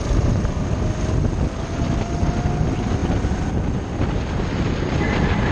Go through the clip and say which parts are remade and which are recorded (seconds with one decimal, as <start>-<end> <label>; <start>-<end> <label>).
0.0-5.5 recorded